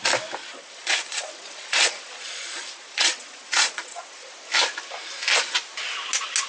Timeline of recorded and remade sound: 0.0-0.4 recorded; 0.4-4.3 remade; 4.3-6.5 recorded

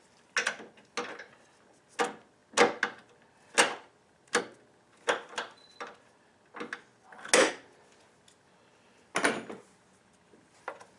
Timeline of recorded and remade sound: 0.0-11.0 recorded